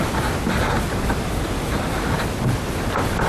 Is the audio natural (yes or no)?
no